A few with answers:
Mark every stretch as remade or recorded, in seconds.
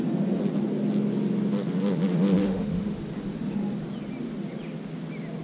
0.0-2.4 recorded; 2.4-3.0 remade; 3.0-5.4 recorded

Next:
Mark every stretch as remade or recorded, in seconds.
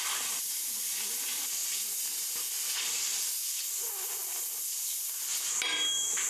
0.0-6.3 recorded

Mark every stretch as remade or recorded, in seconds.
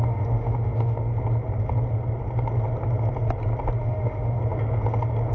0.0-1.1 remade; 1.1-3.8 recorded; 3.8-4.4 remade; 4.4-5.3 recorded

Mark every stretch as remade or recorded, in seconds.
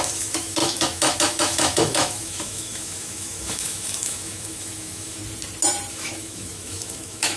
0.0-5.2 remade; 5.2-5.9 recorded; 5.9-7.4 remade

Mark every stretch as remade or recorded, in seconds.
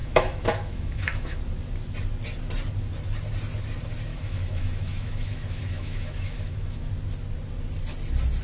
0.0-1.4 remade; 1.4-4.1 recorded; 4.1-6.9 remade; 6.9-8.4 recorded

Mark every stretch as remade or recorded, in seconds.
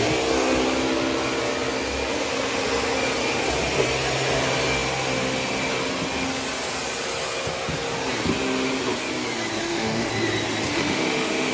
0.0-9.6 recorded; 9.6-10.1 remade; 10.1-10.7 recorded; 10.7-11.5 remade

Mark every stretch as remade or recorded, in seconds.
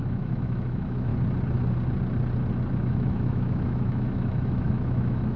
0.0-1.1 remade; 1.1-2.7 recorded; 2.7-5.4 remade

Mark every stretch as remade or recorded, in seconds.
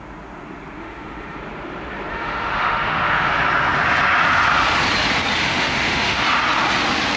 0.0-0.8 recorded; 0.8-1.4 remade; 1.4-2.1 recorded; 2.1-3.3 remade; 3.3-5.4 recorded; 5.4-6.2 remade; 6.2-7.2 recorded